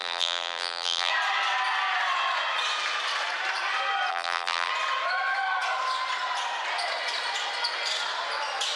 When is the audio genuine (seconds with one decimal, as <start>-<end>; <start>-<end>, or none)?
1.1-4.1; 4.7-8.8